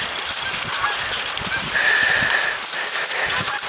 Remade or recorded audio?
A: recorded